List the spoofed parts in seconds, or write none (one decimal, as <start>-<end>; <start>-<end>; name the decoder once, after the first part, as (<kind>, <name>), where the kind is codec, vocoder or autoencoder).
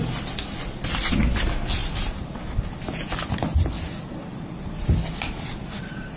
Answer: none